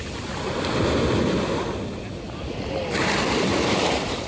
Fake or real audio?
real